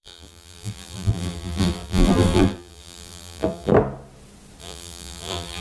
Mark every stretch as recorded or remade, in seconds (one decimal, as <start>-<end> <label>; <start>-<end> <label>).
0.0-3.7 remade; 3.7-4.6 recorded; 4.6-5.6 remade